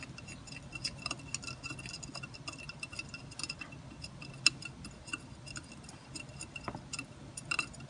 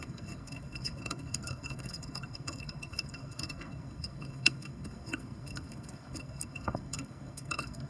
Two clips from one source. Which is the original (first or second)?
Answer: first